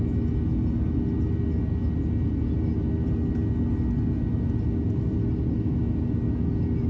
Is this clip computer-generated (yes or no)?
no